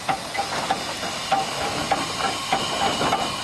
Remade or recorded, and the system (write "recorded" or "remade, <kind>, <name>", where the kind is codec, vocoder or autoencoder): recorded